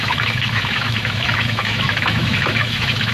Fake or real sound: fake